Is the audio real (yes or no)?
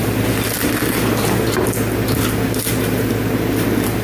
yes